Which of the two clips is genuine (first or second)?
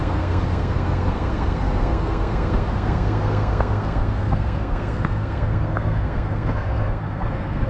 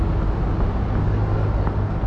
second